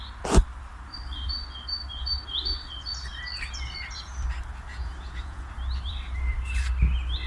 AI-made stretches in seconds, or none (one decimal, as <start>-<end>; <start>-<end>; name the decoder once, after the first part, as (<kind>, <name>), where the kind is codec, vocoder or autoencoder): 4.7-5.5 (vocoder, Vocos)